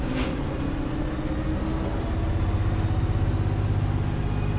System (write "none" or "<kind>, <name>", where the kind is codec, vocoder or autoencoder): none